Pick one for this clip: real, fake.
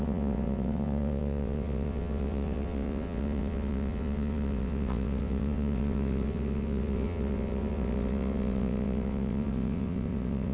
fake